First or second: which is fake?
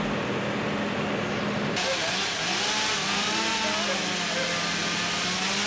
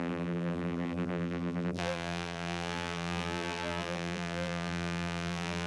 second